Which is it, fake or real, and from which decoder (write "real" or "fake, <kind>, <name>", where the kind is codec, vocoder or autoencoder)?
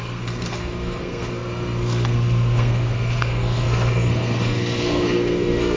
fake, codec, SNAC